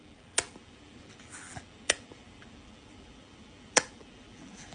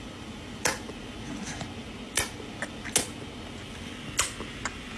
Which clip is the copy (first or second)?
first